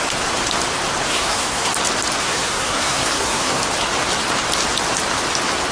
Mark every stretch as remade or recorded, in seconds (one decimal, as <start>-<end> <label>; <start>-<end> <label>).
0.0-1.1 recorded; 1.1-1.7 remade; 1.7-2.2 recorded; 2.2-3.6 remade; 3.6-5.7 recorded